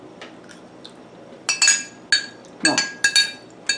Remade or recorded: recorded